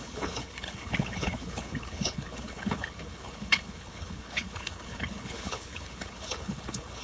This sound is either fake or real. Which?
fake